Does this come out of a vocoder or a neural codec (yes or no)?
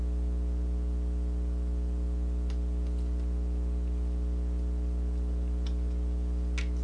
no